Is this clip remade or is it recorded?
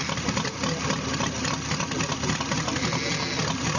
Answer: recorded